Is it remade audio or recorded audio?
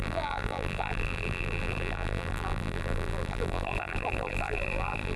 remade